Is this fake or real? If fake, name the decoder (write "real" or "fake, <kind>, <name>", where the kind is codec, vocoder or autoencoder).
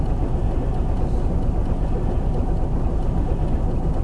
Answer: real